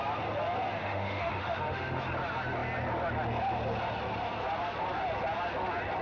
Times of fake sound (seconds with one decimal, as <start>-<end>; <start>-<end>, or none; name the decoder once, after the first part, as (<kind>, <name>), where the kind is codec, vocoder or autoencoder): 0.8-2.0 (autoencoder, DAC-VAE)